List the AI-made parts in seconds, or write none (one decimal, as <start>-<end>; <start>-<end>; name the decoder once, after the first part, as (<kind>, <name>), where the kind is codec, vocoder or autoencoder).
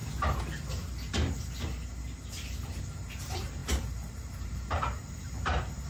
2.8-5.9 (vocoder, BigVGAN v2)